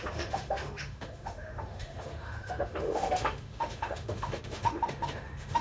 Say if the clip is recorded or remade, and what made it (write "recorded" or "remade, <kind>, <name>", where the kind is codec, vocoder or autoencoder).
remade, autoencoder, DAC-VAE